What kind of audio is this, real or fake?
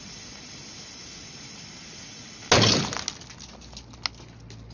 real